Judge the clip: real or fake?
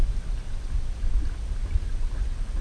real